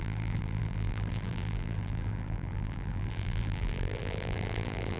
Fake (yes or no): yes